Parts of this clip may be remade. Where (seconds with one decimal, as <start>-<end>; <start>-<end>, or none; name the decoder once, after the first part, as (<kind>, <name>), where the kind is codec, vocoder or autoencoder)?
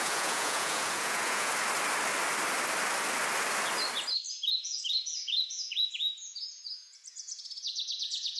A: 0.0-1.5 (vocoder, Vocos); 4.3-8.4